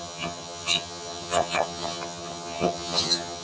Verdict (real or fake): fake